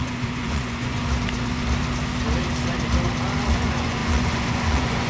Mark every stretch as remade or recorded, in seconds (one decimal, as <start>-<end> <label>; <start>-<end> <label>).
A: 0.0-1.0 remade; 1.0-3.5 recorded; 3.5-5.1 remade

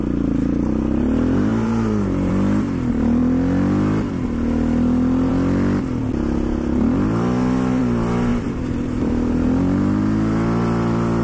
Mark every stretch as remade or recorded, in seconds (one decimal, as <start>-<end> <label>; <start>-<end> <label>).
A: 0.0-1.5 recorded; 1.5-2.3 remade; 2.3-8.3 recorded; 8.3-9.1 remade; 9.1-11.2 recorded

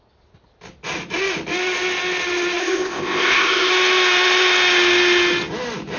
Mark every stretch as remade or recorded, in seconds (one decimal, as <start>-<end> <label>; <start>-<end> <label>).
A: 0.0-2.6 recorded; 2.6-3.7 remade; 3.7-6.0 recorded

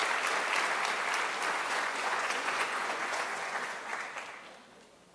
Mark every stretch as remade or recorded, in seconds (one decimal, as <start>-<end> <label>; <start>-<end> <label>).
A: 0.0-1.6 recorded; 1.6-3.9 remade; 3.9-4.6 recorded; 4.6-5.1 remade